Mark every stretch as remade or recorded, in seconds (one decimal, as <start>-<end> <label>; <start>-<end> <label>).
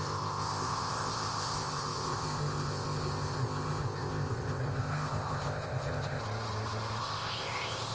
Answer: 0.0-6.2 remade; 6.2-7.0 recorded; 7.0-7.9 remade